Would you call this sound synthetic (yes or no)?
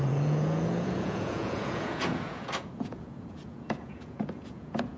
yes